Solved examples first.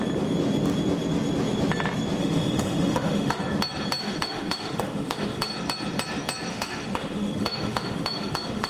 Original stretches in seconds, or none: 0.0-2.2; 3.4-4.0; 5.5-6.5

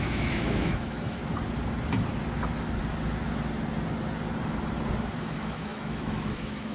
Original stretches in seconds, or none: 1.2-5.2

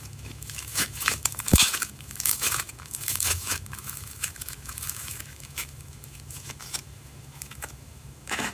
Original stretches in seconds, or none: none